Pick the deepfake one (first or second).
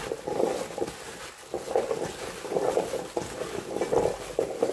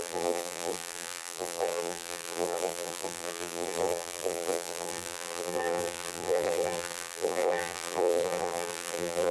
second